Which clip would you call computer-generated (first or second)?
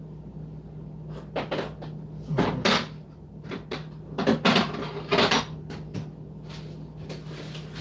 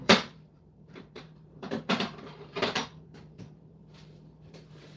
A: second